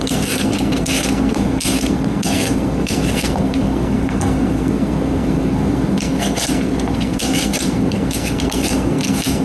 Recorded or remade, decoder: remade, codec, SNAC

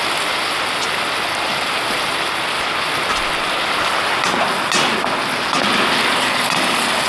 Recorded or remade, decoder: recorded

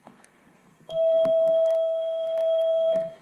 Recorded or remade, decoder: remade, codec, SNAC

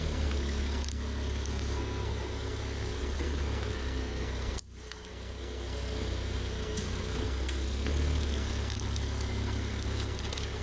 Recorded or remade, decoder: remade, codec, SNAC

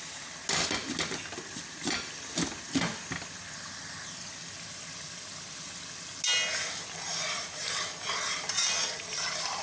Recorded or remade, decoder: recorded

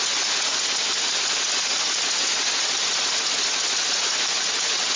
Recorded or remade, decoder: recorded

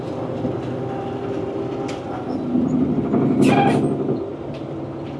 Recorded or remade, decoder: recorded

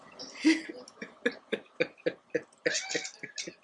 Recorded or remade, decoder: recorded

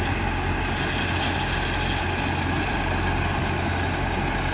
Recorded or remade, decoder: recorded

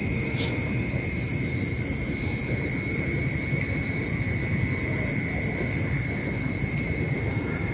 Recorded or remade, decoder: remade, vocoder, BigVGAN v2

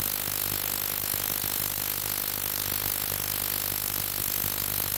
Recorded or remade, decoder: recorded